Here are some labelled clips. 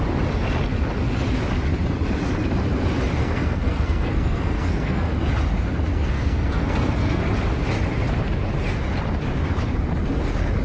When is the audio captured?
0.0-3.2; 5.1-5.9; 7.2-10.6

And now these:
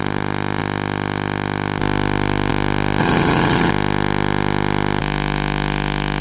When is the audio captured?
0.0-3.0; 3.7-6.2